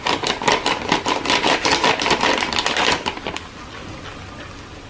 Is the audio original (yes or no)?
yes